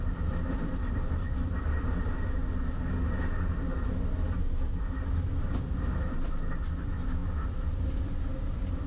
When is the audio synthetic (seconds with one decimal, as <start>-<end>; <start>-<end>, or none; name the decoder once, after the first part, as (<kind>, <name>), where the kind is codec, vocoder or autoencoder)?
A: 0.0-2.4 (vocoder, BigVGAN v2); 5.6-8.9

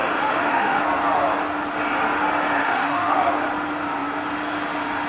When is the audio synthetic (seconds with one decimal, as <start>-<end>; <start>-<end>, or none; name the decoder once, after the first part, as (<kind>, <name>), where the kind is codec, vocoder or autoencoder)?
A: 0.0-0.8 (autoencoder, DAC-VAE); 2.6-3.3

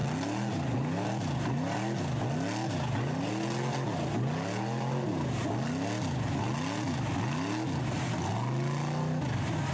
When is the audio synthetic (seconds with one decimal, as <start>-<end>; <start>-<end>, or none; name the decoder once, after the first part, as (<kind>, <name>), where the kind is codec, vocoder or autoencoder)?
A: none

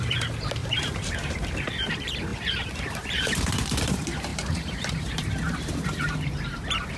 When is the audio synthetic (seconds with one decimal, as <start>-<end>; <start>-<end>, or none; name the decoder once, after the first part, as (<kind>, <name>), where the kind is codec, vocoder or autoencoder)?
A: 0.0-7.0 (vocoder, BigVGAN v2)